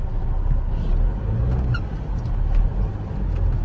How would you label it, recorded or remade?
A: recorded